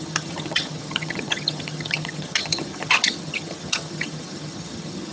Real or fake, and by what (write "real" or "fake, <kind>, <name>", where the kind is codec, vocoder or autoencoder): fake, vocoder, HiFi-GAN